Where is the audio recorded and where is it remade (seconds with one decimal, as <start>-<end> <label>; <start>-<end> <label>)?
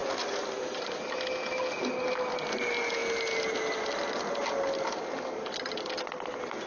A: 0.0-6.7 recorded